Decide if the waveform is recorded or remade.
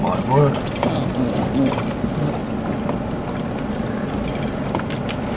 recorded